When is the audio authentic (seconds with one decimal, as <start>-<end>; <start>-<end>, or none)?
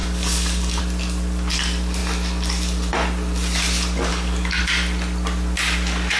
0.8-4.1; 4.6-6.2